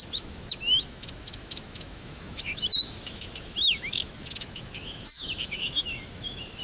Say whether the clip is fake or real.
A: fake